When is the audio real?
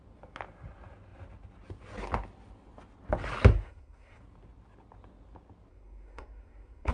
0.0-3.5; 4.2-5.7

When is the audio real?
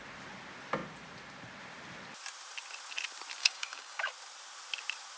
0.0-3.4; 4.1-5.2